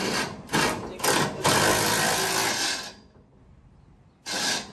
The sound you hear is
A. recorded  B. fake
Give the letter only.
A